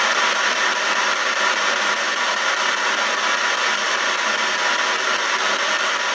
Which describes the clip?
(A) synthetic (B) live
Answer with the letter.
B